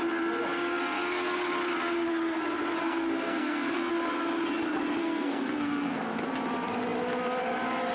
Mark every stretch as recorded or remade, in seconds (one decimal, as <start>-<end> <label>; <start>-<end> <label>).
0.0-2.8 recorded; 2.8-3.9 remade; 3.9-5.0 recorded; 5.0-6.0 remade; 6.0-7.9 recorded